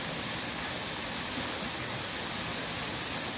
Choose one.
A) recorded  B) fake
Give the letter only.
A